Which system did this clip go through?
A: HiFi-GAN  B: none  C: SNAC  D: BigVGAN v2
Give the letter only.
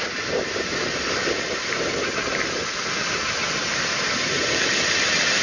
B